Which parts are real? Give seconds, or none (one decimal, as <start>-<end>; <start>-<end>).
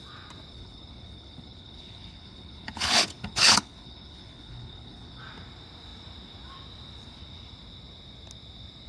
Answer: 0.0-0.5; 5.2-8.9